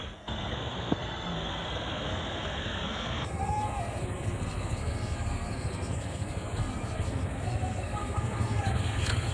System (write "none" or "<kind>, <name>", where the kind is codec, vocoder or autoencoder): codec, SNAC